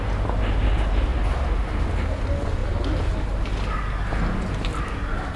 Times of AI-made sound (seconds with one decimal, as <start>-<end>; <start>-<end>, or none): none